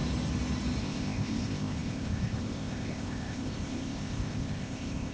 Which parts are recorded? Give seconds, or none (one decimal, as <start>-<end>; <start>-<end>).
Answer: 0.0-0.8